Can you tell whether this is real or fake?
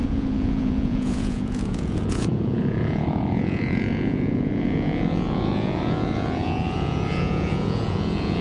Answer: fake